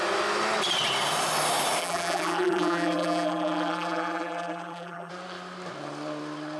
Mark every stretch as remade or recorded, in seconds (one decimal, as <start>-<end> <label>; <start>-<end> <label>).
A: 0.0-1.8 recorded; 1.8-5.1 remade; 5.1-6.6 recorded

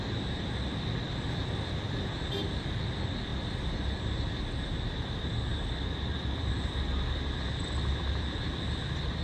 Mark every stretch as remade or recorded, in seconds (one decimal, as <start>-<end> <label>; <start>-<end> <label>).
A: 0.0-3.3 remade; 3.3-4.4 recorded; 4.4-9.2 remade

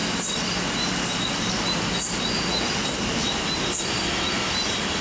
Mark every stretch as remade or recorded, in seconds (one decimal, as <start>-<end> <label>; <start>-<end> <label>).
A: 0.0-2.8 remade; 2.8-3.8 recorded; 3.8-5.0 remade

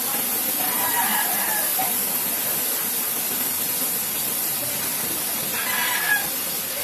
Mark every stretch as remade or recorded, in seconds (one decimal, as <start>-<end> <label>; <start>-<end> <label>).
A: 0.0-6.8 recorded